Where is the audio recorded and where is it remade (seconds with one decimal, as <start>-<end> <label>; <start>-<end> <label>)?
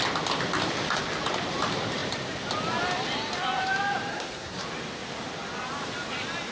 0.0-4.1 recorded; 4.1-4.6 remade; 4.6-6.5 recorded